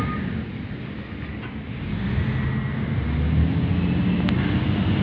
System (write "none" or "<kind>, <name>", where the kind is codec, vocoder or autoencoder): none